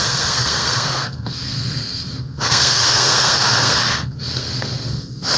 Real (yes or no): no